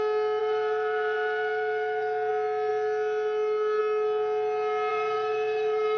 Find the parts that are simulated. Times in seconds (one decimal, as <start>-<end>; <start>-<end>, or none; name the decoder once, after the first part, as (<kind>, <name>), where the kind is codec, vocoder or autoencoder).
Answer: 0.4-2.3 (vocoder, BigVGAN v2); 4.9-6.0